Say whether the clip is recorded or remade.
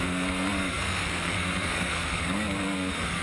remade